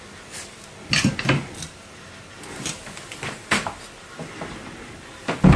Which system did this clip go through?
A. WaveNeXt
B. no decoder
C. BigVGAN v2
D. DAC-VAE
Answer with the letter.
B